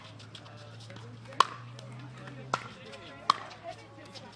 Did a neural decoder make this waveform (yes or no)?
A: no